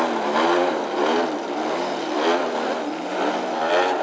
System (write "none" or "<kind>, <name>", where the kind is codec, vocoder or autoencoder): vocoder, BigVGAN v2